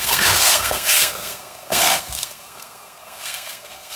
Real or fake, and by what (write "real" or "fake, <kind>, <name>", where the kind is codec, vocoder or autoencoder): fake, codec, SNAC